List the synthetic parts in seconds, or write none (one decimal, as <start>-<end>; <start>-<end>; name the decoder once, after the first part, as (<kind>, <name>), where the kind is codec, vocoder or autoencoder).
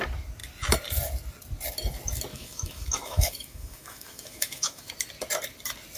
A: 2.3-4.9 (autoencoder, DAC-VAE)